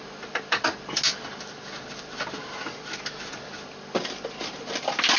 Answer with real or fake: real